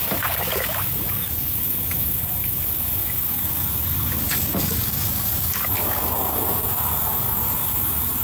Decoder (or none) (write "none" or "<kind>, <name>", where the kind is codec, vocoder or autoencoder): codec, DAC